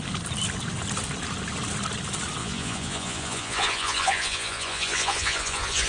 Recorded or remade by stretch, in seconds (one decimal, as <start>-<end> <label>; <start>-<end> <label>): 0.0-2.4 recorded; 2.4-5.9 remade